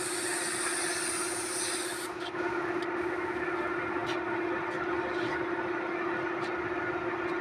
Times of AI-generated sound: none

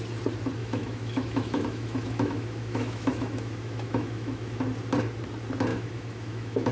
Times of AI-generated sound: 0.6-4.6 (autoencoder, DAC-VAE); 5.7-6.7

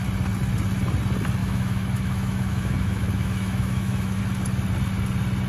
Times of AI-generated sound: 1.4-4.2 (autoencoder, DAC-VAE)